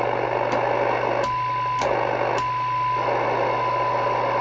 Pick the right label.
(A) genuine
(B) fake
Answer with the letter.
A